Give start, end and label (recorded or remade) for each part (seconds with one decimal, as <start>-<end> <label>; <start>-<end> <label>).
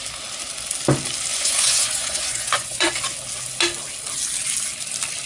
0.0-1.3 recorded; 1.3-2.9 remade; 2.9-5.3 recorded